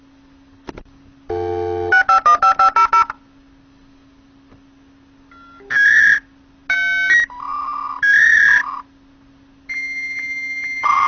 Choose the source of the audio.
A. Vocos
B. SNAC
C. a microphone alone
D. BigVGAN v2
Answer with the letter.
C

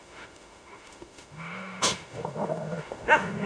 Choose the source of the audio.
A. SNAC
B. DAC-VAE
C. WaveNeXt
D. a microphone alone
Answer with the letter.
B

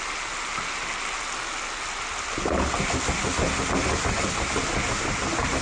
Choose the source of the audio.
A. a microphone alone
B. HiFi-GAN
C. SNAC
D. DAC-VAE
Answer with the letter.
A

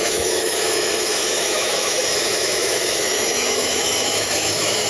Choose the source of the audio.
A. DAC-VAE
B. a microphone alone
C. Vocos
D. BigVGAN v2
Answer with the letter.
A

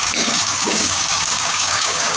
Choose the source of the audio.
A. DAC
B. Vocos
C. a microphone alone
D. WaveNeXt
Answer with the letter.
A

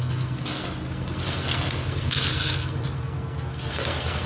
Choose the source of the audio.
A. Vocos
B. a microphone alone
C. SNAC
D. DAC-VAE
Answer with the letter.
C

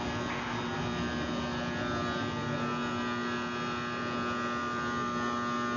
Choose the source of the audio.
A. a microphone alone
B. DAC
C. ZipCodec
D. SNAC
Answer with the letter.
A